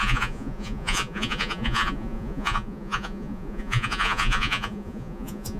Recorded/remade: remade